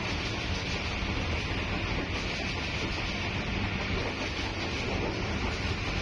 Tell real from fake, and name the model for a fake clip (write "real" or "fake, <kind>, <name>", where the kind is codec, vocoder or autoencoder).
real